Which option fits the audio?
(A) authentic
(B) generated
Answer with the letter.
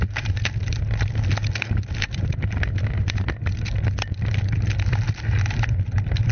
A